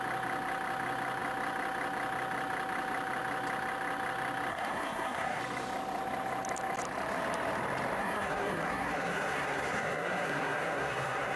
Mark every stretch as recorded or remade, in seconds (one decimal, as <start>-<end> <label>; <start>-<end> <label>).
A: 0.0-4.5 recorded; 4.5-5.4 remade; 5.4-8.0 recorded; 8.0-11.4 remade